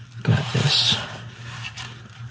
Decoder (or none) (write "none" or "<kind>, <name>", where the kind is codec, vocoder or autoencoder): none